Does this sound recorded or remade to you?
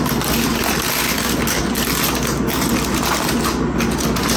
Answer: recorded